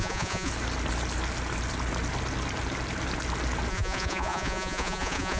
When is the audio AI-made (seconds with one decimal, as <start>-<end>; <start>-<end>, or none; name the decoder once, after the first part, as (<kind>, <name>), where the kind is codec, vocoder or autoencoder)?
0.0-0.5 (vocoder, Vocos); 3.7-5.4